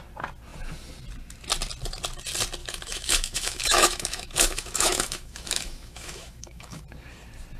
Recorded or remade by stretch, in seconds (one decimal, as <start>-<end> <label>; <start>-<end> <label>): 0.0-2.6 recorded; 2.6-6.8 remade; 6.8-7.6 recorded